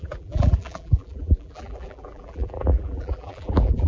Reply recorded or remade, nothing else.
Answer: remade